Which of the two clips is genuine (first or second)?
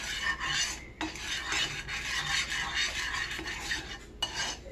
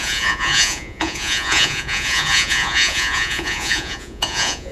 first